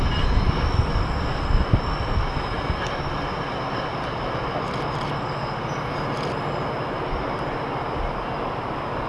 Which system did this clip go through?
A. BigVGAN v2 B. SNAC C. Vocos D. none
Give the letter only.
D